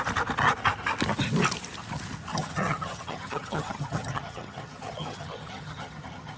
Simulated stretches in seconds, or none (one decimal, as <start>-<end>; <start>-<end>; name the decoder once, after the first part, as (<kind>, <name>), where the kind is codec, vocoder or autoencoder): 2.3-6.4 (vocoder, HiFi-GAN)